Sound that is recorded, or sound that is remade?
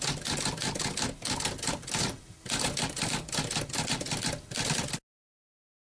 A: recorded